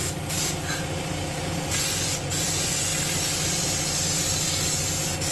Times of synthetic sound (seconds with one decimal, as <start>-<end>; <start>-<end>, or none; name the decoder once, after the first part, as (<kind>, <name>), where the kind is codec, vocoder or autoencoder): 1.7-2.9 (vocoder, Vocos)